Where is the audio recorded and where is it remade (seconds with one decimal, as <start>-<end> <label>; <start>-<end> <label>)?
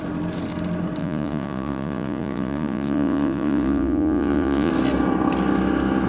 0.0-1.0 recorded; 1.0-4.7 remade; 4.7-6.1 recorded